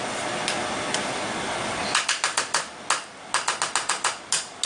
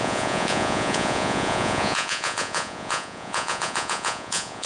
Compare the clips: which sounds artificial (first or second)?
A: second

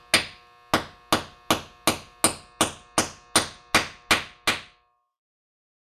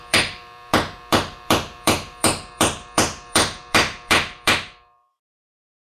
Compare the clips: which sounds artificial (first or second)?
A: second